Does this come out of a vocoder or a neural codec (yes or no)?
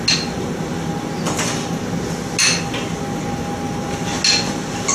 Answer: no